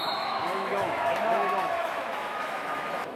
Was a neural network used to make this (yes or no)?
yes